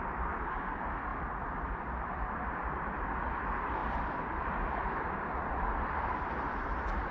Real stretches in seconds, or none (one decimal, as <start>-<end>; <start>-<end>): 0.0-1.1; 1.7-3.8